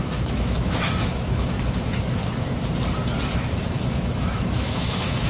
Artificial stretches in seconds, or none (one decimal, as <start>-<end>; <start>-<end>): 0.0-2.2; 3.6-5.3